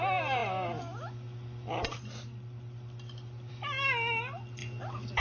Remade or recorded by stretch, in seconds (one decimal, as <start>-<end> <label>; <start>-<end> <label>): 0.0-5.2 recorded

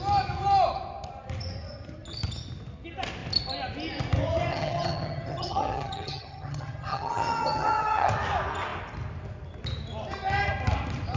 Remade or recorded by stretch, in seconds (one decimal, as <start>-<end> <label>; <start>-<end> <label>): 0.0-4.5 recorded; 4.5-8.1 remade; 8.1-11.2 recorded